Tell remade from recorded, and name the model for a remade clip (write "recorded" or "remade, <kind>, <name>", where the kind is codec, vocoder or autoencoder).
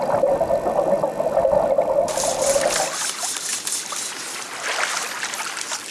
recorded